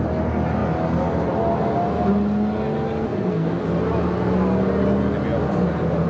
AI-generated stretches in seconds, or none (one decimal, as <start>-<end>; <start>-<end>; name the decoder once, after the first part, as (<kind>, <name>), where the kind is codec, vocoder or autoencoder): 3.0-3.6 (codec, SNAC)